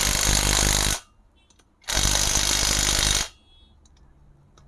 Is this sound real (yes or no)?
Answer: yes